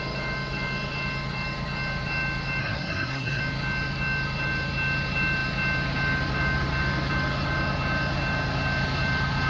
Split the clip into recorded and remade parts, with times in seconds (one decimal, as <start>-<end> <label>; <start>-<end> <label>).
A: 0.0-2.6 recorded; 2.6-3.4 remade; 3.4-9.5 recorded